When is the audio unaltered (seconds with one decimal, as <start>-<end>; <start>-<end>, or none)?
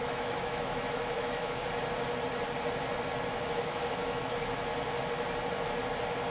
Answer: 1.6-3.3; 4.7-6.3